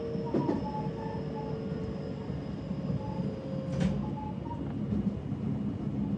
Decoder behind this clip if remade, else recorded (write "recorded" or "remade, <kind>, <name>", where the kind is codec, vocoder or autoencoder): recorded